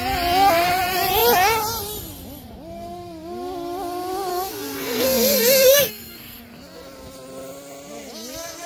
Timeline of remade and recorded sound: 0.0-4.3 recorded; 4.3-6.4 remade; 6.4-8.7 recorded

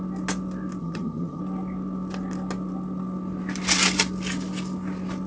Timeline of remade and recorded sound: 0.0-0.8 recorded; 0.8-1.4 remade; 1.4-5.3 recorded